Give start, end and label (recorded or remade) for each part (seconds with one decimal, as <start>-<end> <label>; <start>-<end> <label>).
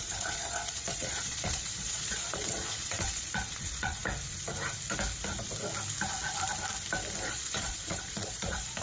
0.0-4.0 remade; 4.0-7.2 recorded; 7.2-8.8 remade